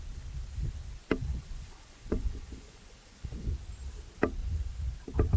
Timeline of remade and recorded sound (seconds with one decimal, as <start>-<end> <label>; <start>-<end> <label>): 0.0-1.3 recorded; 1.3-3.5 remade; 3.5-4.4 recorded; 4.4-5.0 remade; 5.0-5.4 recorded